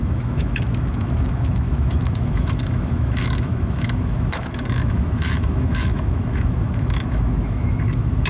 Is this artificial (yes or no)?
yes